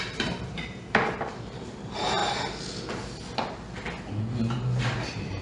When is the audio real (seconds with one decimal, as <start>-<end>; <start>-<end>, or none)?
2.2-4.8

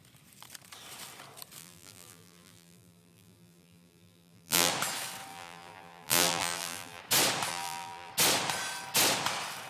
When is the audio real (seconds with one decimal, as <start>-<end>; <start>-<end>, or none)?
0.0-1.6; 4.7-5.3; 7.0-7.5; 8.1-9.7